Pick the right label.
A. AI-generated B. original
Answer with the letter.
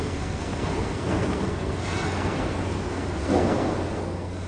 A